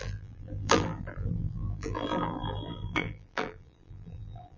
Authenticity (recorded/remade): remade